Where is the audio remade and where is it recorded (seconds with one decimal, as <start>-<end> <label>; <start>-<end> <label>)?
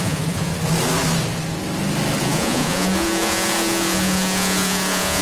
0.0-0.5 remade; 0.5-2.2 recorded; 2.2-5.2 remade